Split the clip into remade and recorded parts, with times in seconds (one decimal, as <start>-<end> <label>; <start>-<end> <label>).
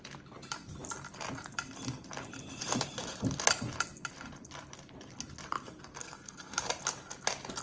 0.0-6.0 recorded; 6.0-6.6 remade; 6.6-7.6 recorded